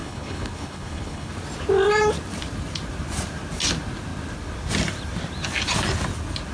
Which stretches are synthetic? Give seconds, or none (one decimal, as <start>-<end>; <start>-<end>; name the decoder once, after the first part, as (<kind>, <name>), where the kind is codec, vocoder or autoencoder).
0.0-1.3 (codec, HILCodec)